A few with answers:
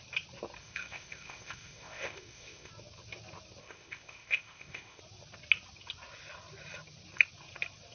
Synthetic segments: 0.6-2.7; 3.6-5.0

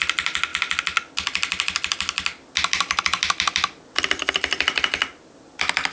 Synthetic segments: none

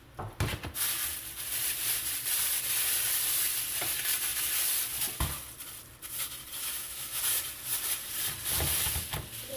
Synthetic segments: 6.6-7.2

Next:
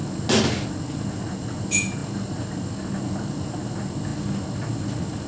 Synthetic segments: none